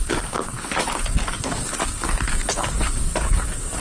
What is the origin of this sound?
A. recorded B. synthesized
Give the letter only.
B